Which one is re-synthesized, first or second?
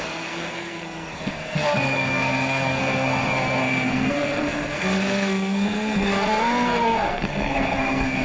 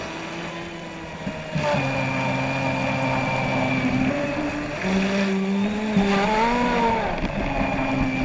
first